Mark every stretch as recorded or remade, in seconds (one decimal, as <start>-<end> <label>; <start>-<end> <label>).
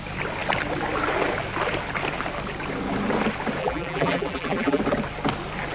0.0-3.6 recorded; 3.6-4.8 remade; 4.8-5.7 recorded